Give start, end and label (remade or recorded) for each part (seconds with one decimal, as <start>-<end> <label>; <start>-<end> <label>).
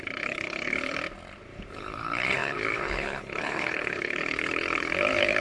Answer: 0.0-1.0 remade; 1.0-1.7 recorded; 1.7-5.4 remade